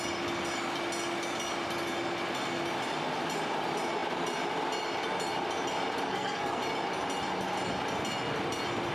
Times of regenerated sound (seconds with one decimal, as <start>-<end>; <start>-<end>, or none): 6.1-6.6